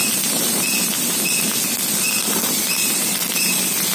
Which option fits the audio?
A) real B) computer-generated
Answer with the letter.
A